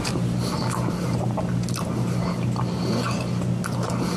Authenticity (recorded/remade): recorded